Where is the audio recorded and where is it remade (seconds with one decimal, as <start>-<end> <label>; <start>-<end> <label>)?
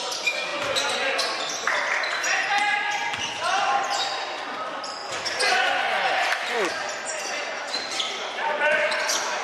0.0-0.5 remade; 0.5-3.3 recorded; 3.3-5.0 remade; 5.0-6.1 recorded; 6.1-9.4 remade